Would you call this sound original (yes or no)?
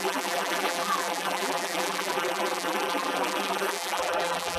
no